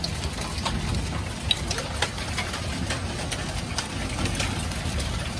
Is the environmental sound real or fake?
real